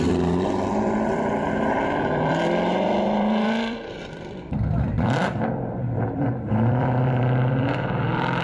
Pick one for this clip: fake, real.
fake